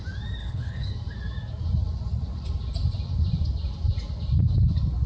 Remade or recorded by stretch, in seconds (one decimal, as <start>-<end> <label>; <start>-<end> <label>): 0.0-0.4 recorded; 0.4-0.9 remade; 0.9-5.1 recorded

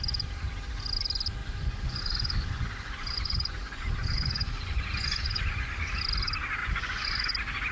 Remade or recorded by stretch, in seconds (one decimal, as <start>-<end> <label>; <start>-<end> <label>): 0.0-1.4 recorded; 1.4-6.0 remade; 6.0-6.6 recorded; 6.6-7.3 remade; 7.3-7.7 recorded

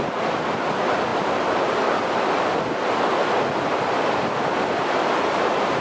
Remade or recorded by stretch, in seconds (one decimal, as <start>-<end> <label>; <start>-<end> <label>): 0.0-5.8 recorded

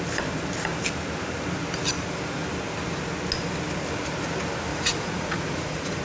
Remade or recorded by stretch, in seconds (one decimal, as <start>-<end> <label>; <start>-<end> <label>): 0.0-4.7 recorded; 4.7-6.0 remade

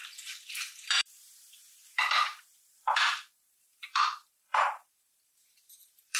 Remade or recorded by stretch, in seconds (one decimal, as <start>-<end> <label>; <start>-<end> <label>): 0.0-6.2 remade

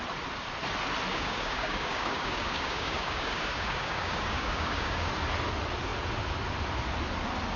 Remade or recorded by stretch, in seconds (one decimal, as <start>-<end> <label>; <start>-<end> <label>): 0.0-1.1 recorded; 1.1-5.1 remade; 5.1-7.6 recorded